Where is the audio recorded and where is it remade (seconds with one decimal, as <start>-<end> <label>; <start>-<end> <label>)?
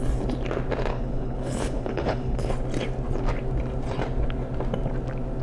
0.0-0.9 recorded; 0.9-2.5 remade; 2.5-5.4 recorded